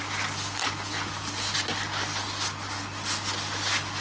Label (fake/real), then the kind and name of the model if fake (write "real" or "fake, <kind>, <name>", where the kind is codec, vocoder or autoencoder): real